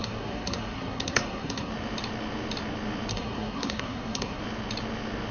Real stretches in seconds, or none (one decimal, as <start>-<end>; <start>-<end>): 1.7-3.1; 4.4-5.3